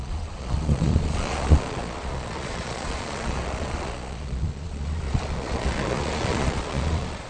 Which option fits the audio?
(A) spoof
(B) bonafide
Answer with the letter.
A